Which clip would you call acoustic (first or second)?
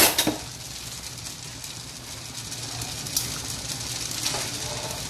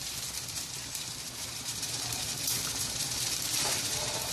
first